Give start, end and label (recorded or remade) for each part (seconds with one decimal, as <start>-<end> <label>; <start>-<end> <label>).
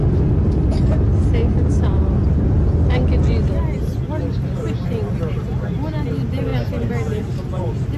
0.0-8.0 recorded